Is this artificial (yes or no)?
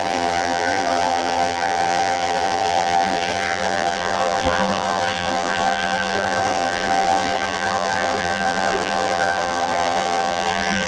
yes